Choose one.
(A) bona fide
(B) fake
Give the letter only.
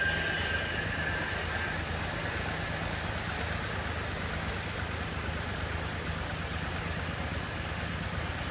A